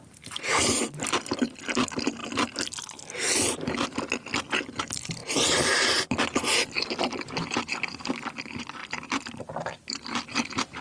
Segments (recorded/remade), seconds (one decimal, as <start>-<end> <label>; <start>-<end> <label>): 0.0-2.2 remade; 2.2-4.8 recorded; 4.8-5.2 remade; 5.2-7.0 recorded; 7.0-8.8 remade; 8.8-9.4 recorded; 9.4-10.8 remade